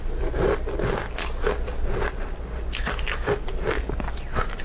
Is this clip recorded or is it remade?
recorded